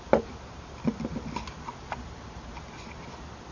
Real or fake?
real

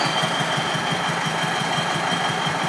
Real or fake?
fake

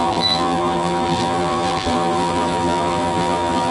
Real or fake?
fake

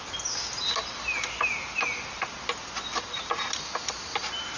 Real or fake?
real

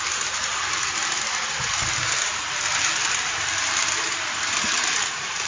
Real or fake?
fake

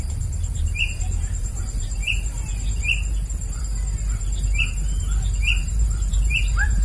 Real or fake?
fake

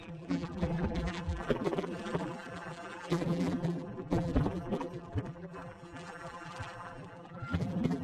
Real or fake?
fake